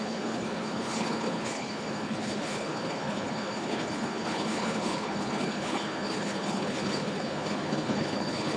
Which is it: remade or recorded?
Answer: remade